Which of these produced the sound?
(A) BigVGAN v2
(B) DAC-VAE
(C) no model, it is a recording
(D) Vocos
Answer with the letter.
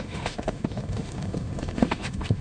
B